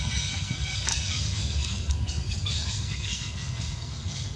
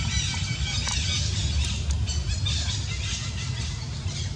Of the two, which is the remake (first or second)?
first